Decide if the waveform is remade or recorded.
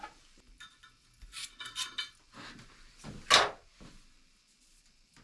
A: recorded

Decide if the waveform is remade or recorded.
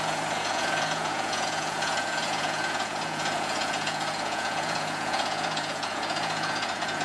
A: remade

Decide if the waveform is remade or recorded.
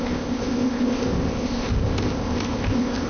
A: remade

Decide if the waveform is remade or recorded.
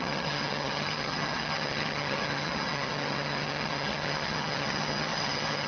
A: remade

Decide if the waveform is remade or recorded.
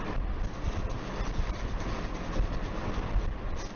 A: recorded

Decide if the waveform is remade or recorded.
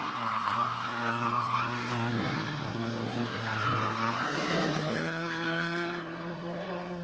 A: remade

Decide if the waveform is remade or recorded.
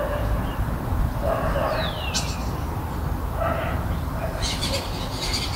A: recorded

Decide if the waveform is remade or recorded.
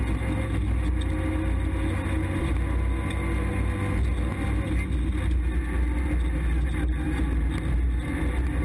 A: recorded